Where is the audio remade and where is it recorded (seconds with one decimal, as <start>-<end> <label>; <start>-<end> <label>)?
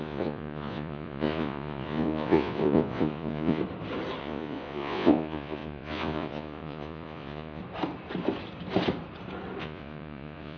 0.0-3.6 remade; 3.6-4.2 recorded; 4.2-7.6 remade; 7.6-9.6 recorded; 9.6-10.6 remade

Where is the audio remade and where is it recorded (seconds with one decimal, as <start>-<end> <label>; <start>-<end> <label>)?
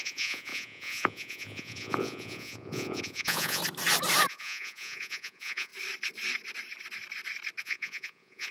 0.0-3.6 remade; 3.6-4.3 recorded; 4.3-5.7 remade; 5.7-7.6 recorded; 7.6-8.5 remade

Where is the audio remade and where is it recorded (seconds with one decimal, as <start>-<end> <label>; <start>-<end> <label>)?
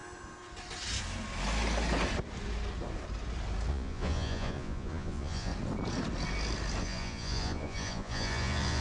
0.0-3.7 recorded; 3.7-5.5 remade; 5.5-6.8 recorded; 6.8-8.8 remade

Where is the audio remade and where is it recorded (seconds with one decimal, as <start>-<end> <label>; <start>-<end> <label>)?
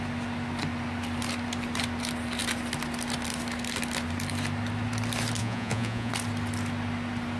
0.0-5.4 recorded; 5.4-6.1 remade; 6.1-7.4 recorded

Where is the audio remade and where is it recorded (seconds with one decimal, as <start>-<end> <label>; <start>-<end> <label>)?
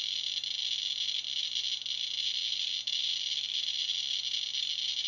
0.0-5.1 recorded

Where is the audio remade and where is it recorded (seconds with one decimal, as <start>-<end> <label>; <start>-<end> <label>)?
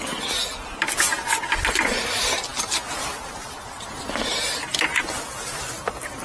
0.0-6.2 recorded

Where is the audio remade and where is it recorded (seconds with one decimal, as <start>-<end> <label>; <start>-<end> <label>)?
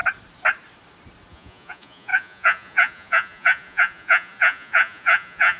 0.0-1.3 recorded; 1.3-5.6 remade